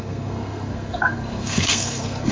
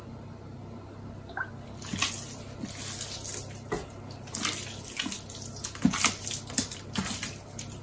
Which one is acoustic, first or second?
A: second